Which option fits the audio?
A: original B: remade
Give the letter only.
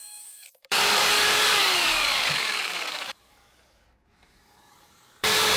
B